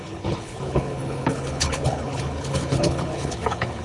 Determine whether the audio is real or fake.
fake